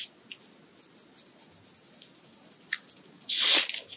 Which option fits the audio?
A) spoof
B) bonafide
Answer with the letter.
B